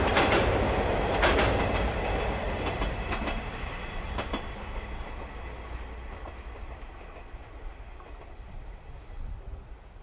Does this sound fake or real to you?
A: real